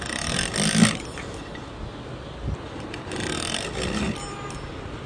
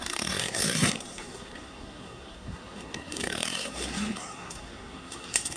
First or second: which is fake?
second